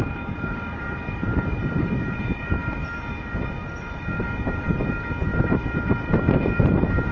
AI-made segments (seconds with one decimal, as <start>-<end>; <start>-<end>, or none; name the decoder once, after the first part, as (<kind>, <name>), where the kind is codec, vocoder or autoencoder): 0.0-7.1 (vocoder, BigVGAN v2)